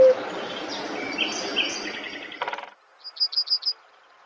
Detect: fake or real real